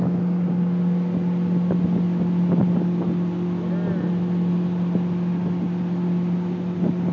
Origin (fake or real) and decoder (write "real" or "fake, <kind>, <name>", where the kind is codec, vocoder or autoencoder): real